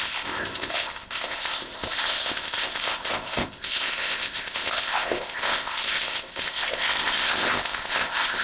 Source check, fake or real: fake